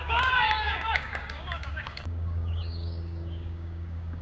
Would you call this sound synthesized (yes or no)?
yes